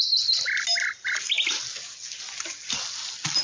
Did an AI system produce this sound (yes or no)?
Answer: no